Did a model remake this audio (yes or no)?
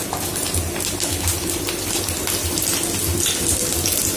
no